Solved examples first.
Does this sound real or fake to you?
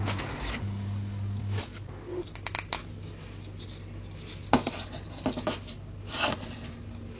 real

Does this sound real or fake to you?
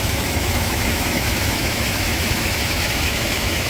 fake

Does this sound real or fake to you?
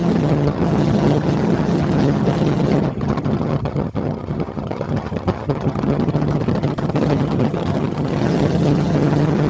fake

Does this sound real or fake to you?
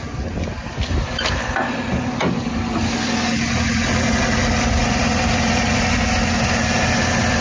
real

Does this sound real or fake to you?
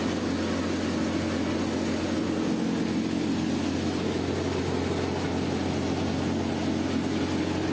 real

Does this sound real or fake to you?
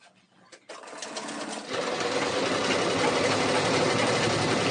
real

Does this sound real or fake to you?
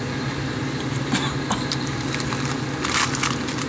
real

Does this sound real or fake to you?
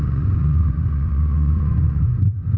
fake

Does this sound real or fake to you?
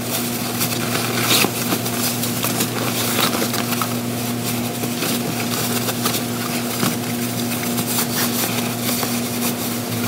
real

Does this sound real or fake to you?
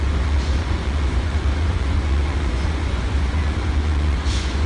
fake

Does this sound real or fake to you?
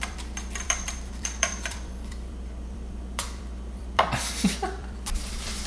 fake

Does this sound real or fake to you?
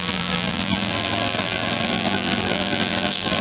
fake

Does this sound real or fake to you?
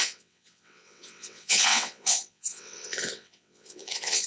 fake